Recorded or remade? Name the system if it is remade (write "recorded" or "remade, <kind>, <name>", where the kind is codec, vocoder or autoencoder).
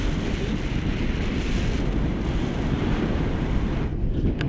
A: recorded